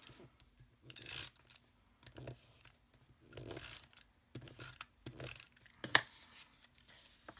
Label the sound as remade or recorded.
recorded